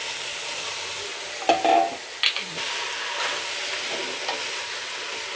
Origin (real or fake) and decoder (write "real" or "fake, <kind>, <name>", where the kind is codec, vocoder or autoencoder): real